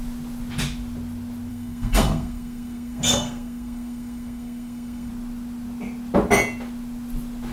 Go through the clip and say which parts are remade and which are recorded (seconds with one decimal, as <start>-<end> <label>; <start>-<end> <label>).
0.0-1.5 recorded; 1.5-5.1 remade; 5.1-7.5 recorded